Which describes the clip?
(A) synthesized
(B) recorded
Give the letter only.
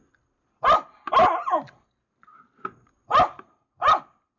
B